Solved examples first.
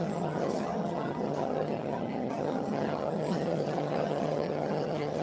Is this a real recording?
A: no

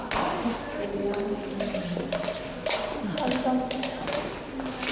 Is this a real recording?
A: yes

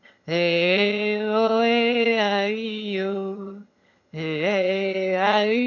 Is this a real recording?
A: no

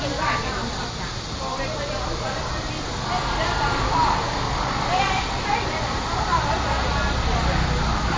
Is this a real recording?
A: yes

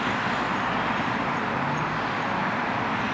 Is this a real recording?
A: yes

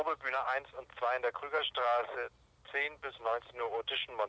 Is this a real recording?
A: yes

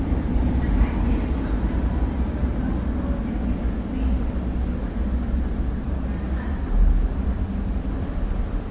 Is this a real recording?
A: yes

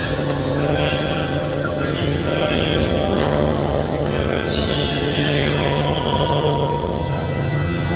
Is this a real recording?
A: no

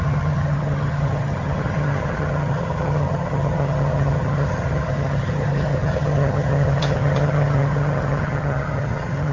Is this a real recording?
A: no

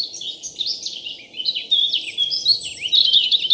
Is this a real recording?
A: yes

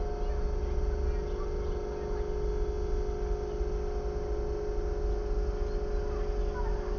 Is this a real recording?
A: yes